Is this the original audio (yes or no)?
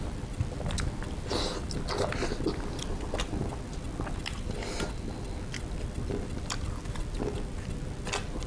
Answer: yes